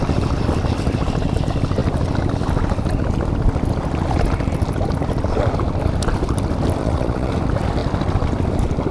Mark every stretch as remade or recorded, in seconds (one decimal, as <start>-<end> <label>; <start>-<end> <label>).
0.0-6.8 recorded; 6.8-7.3 remade; 7.3-8.9 recorded